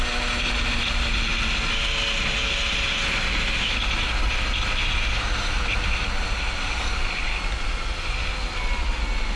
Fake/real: real